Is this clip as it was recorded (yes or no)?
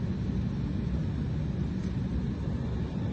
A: yes